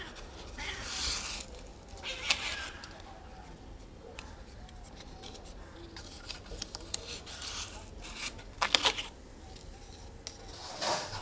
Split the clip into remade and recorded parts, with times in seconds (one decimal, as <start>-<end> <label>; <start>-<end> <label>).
0.0-11.2 recorded